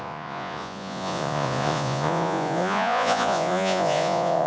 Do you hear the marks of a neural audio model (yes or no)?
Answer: yes